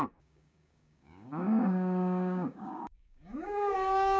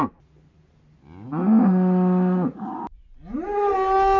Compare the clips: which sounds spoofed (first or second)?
first